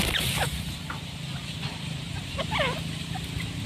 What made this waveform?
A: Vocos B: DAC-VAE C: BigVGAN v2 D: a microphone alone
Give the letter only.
D